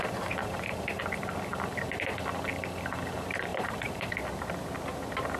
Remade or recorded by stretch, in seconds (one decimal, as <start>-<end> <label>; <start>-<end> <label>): 0.0-0.4 recorded; 0.4-1.0 remade; 1.0-3.5 recorded; 3.5-4.1 remade; 4.1-5.4 recorded